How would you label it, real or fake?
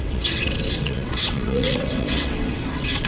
fake